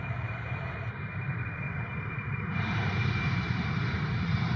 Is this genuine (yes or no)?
no